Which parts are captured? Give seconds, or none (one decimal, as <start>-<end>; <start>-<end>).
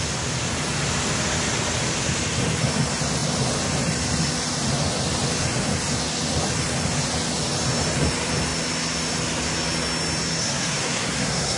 0.0-10.4